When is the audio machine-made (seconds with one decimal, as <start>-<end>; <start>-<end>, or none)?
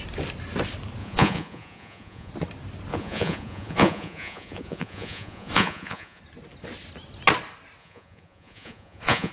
1.0-2.3; 2.9-6.2; 7.8-9.3